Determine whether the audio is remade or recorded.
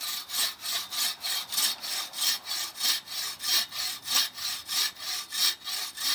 recorded